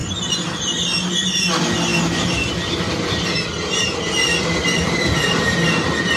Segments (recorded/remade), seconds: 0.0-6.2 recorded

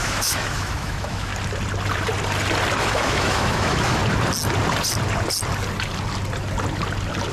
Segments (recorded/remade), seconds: 0.0-1.3 remade; 1.3-2.8 recorded; 2.8-4.0 remade; 4.0-7.3 recorded

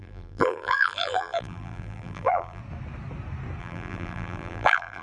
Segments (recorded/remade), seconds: 0.0-2.6 remade; 2.6-3.6 recorded; 3.6-5.0 remade

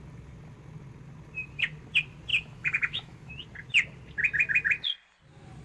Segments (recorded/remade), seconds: 0.0-2.3 recorded; 2.3-3.3 remade; 3.3-5.6 recorded

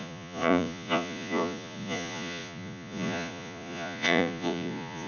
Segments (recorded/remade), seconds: 0.0-5.1 remade

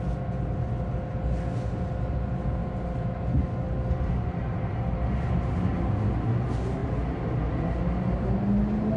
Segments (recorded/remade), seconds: 0.0-9.0 recorded